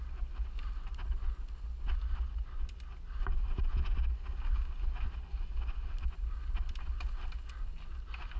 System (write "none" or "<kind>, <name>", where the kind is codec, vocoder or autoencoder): none